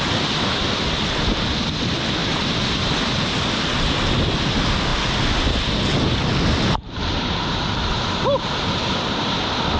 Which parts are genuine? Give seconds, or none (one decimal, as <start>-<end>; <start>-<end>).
0.0-9.8